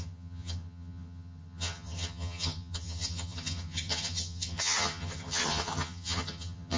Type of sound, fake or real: fake